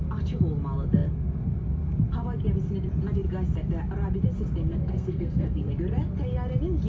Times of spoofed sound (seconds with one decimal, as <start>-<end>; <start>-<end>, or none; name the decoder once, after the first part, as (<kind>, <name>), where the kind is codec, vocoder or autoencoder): 4.7-5.7 (codec, SNAC)